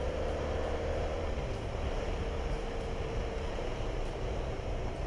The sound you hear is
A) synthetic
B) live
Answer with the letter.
A